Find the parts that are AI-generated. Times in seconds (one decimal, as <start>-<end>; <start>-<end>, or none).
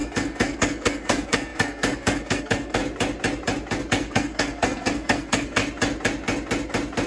0.0-2.8; 3.9-5.6